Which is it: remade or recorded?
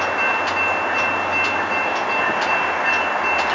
recorded